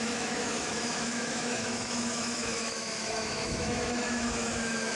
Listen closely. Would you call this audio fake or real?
fake